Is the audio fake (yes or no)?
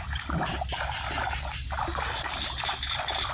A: no